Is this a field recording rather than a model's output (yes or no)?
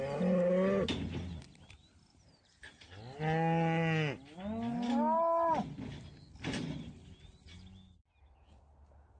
yes